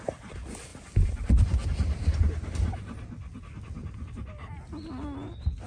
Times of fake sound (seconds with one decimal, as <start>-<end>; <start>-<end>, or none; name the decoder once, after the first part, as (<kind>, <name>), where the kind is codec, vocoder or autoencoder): none